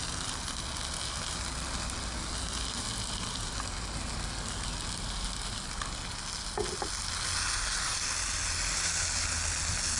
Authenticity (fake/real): real